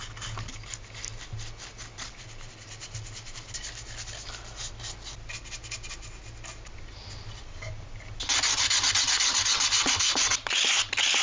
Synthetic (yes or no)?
no